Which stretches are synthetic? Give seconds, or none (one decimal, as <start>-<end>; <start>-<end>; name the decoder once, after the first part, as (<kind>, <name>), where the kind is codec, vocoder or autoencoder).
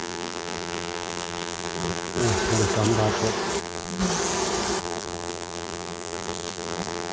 0.0-2.2 (vocoder, BigVGAN v2); 3.6-4.0; 4.8-7.1